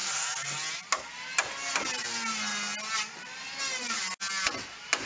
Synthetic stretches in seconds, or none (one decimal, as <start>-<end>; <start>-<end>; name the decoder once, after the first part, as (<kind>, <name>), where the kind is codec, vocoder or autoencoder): none